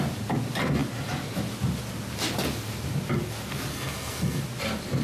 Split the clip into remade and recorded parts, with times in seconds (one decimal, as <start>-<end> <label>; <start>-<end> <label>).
0.0-3.7 recorded; 3.7-4.4 remade; 4.4-5.0 recorded